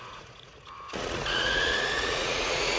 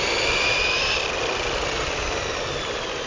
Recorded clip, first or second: second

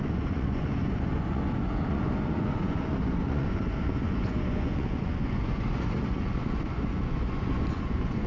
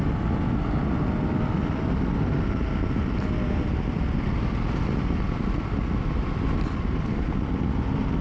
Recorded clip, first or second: second